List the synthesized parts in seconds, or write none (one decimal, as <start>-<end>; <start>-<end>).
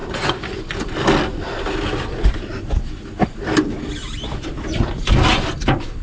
none